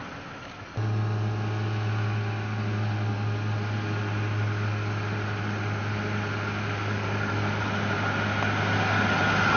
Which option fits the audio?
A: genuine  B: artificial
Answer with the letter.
A